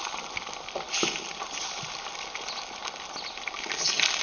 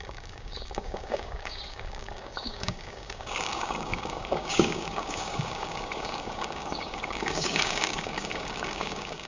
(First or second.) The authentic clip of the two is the first